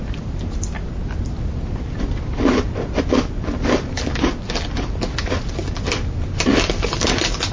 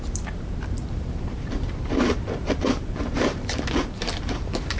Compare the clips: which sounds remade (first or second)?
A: second